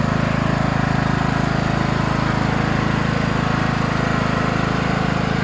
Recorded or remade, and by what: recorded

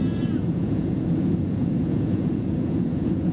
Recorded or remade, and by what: remade, vocoder, Vocos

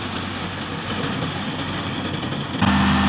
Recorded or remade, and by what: recorded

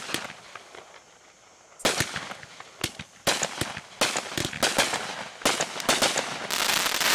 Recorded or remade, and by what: recorded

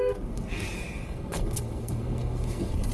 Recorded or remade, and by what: remade, codec, SNAC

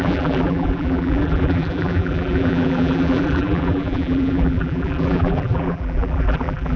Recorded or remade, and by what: remade, vocoder, BigVGAN v2